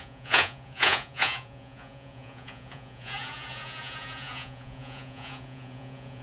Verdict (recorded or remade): remade